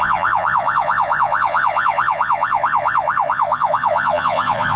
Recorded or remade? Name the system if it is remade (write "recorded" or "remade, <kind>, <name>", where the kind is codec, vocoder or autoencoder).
remade, vocoder, Vocos